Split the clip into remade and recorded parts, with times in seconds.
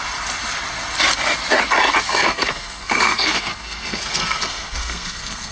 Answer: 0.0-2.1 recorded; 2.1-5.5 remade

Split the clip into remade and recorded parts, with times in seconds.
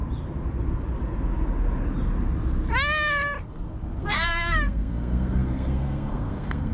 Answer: 0.0-4.0 recorded; 4.0-6.7 remade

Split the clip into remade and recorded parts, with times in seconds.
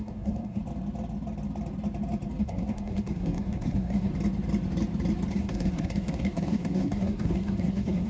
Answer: 0.0-0.6 remade; 0.6-2.4 recorded; 2.4-4.1 remade; 4.1-5.3 recorded; 5.3-8.1 remade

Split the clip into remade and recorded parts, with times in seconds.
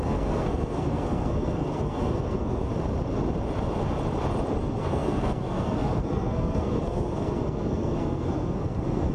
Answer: 0.0-2.7 remade; 2.7-4.6 recorded; 4.6-9.1 remade